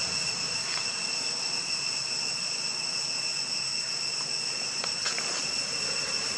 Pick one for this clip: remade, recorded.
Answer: recorded